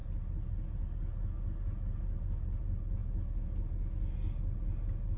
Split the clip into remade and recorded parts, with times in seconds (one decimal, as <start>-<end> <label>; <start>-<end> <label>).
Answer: 0.0-5.2 recorded